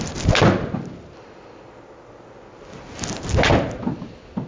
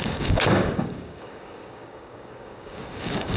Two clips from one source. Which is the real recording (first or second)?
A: first